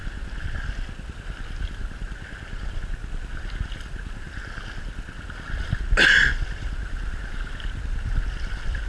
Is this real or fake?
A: real